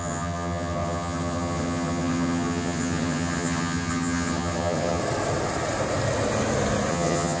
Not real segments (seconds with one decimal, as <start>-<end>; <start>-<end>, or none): 0.0-5.0; 6.9-7.4